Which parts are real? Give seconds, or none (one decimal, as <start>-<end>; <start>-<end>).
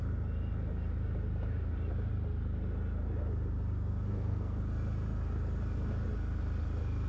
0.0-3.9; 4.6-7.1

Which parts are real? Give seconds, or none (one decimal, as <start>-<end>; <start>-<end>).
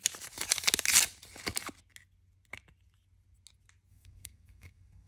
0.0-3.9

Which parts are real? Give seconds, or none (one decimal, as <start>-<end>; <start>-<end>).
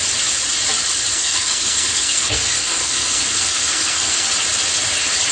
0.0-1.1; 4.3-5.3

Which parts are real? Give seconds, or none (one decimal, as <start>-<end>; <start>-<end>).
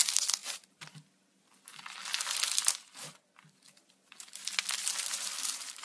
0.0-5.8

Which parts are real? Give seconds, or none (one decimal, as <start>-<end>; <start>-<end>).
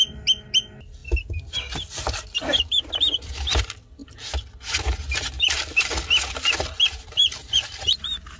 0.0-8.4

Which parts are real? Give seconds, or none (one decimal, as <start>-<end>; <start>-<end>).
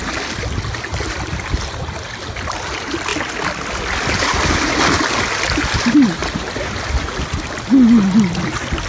0.0-8.9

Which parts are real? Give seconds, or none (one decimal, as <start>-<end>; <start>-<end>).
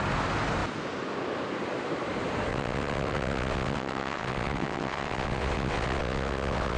0.0-2.5